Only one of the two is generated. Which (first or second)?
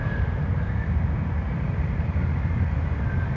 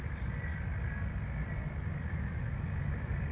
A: first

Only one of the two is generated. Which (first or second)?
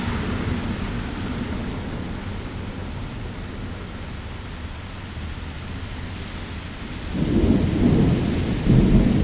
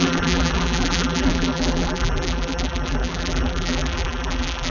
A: second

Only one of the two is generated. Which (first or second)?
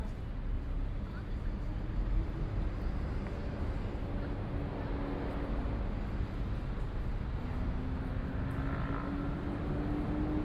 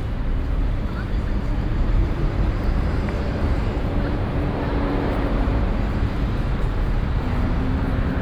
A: second